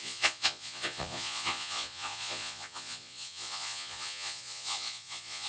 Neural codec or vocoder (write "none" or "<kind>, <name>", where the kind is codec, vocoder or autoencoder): vocoder, Vocos